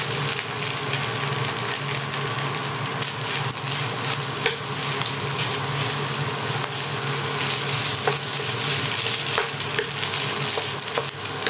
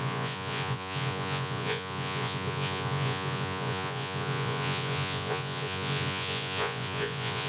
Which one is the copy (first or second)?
second